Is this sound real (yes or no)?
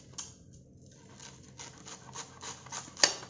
yes